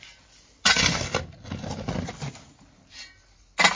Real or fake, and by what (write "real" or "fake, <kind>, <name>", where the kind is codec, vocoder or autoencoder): real